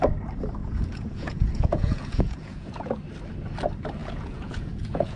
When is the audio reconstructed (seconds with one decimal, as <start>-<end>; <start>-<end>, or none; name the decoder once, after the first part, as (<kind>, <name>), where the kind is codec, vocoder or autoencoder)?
0.6-2.9 (vocoder, Vocos); 4.0-5.2